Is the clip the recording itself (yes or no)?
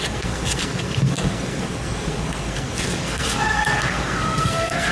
no